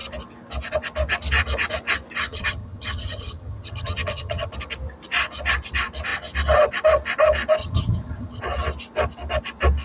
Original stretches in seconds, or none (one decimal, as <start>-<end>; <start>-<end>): 0.0-2.3; 4.5-7.6; 8.4-9.8